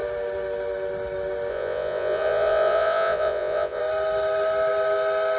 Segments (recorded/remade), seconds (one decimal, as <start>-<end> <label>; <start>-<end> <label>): 0.0-1.5 recorded; 1.5-3.8 remade; 3.8-5.4 recorded